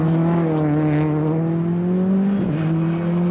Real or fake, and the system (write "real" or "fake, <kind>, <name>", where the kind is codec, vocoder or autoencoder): real